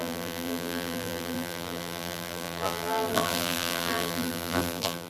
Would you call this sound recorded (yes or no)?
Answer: no